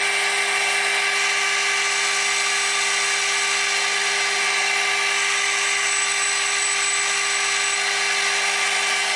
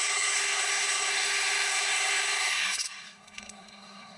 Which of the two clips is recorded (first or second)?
first